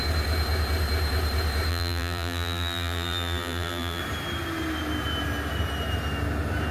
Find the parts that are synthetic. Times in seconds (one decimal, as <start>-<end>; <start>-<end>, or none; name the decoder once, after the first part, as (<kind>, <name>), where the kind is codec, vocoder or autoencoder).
1.7-4.0 (vocoder, BigVGAN v2)